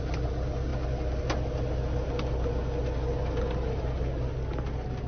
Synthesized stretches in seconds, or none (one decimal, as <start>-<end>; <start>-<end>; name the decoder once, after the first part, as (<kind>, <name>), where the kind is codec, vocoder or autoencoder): none